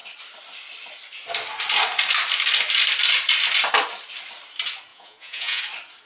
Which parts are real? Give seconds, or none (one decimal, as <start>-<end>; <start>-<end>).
0.0-4.9; 5.6-6.1